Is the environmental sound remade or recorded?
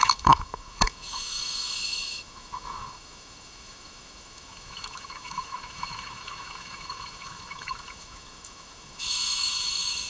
remade